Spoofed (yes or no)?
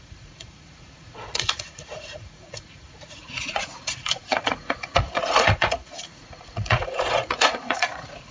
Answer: yes